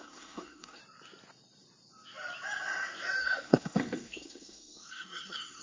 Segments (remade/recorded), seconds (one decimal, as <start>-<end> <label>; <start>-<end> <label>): 0.0-0.8 remade; 0.8-3.2 recorded; 3.2-5.6 remade